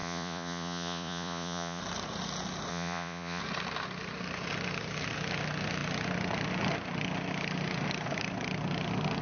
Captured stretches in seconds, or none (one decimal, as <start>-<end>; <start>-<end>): 1.8-2.7; 3.4-9.2